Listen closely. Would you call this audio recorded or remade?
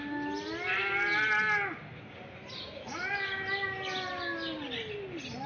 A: recorded